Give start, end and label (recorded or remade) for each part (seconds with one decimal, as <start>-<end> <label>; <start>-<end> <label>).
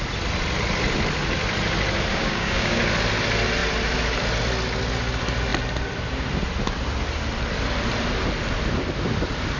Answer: 0.0-2.1 recorded; 2.1-2.8 remade; 2.8-9.6 recorded